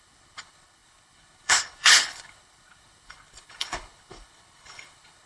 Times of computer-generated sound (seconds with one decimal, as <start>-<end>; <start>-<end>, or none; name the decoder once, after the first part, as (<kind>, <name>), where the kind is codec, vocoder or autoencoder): 0.0-5.3 (codec, HILCodec)